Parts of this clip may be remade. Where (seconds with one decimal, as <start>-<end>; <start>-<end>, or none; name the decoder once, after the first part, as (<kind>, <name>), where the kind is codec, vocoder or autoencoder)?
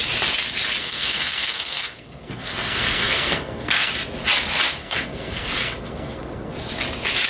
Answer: 0.8-3.9 (codec, SNAC); 4.8-6.5